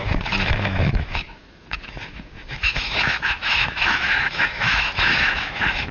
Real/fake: fake